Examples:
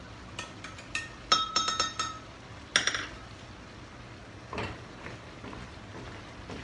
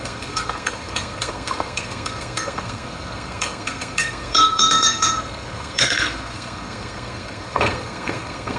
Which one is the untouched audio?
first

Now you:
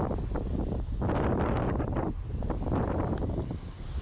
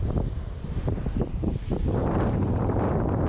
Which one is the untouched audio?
first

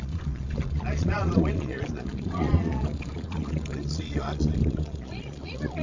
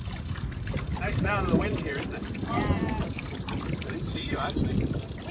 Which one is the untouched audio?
second